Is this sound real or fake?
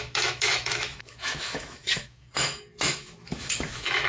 fake